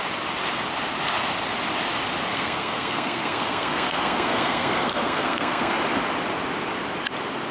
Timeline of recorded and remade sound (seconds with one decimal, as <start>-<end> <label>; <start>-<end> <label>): 0.0-2.3 recorded; 2.3-5.7 remade; 5.7-7.5 recorded